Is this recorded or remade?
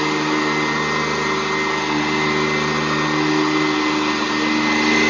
recorded